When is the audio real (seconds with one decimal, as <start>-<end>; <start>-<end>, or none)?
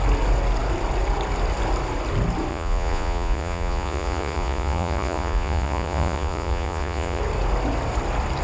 0.0-2.5; 7.2-8.4